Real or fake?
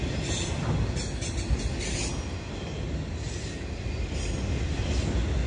real